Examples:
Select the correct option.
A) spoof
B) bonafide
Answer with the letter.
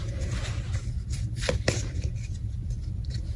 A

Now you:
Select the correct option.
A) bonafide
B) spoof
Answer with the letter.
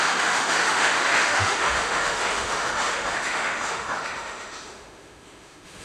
B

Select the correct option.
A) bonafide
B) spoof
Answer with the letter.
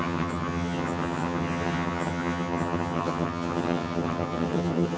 B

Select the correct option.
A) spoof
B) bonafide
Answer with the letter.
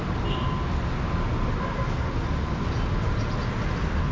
B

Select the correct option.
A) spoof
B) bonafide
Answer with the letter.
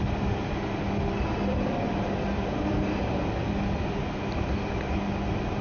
B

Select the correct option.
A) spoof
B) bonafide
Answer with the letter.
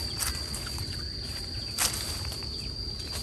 B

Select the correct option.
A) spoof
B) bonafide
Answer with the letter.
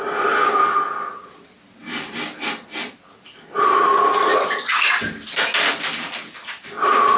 B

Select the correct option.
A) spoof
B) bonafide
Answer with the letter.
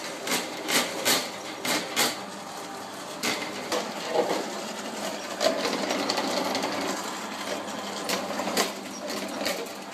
B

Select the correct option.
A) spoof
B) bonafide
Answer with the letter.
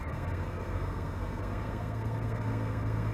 A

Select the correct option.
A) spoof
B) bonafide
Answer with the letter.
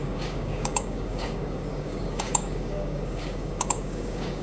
A